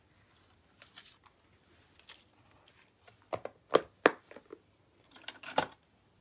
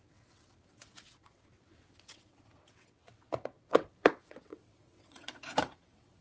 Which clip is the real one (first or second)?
first